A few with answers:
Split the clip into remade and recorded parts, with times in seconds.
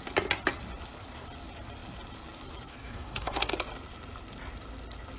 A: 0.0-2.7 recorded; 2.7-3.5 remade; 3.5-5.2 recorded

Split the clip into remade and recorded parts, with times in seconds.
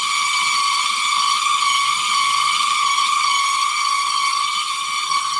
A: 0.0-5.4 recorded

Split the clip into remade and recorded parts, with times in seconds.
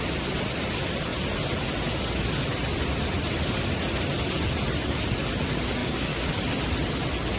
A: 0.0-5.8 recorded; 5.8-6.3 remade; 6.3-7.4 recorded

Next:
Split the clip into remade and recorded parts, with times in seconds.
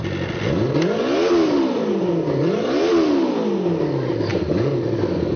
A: 0.0-5.4 recorded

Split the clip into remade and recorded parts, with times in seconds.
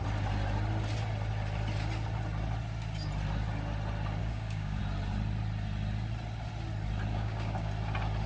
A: 0.0-4.2 recorded; 4.2-4.8 remade; 4.8-7.1 recorded; 7.1-7.7 remade; 7.7-8.3 recorded